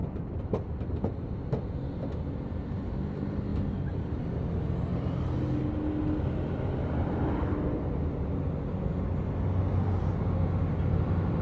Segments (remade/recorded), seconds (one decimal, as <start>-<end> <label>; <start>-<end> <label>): 0.0-1.1 remade; 1.1-11.4 recorded